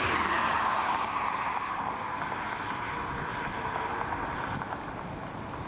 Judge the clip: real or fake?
real